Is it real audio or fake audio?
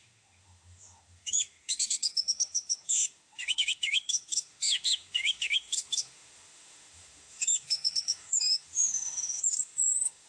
fake